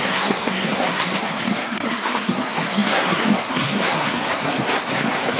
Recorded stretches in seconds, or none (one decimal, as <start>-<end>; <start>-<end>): none